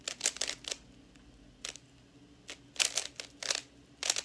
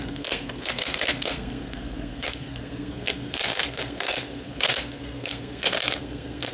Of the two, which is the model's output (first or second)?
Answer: second